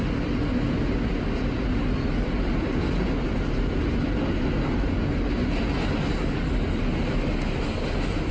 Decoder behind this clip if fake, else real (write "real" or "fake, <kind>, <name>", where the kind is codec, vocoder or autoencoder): real